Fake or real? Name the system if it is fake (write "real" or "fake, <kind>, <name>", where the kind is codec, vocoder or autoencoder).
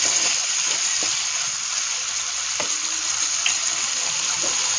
real